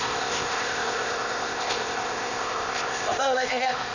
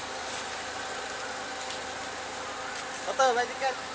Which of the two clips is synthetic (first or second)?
first